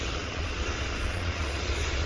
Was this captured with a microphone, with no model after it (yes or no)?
no